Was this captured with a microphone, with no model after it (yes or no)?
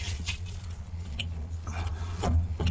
no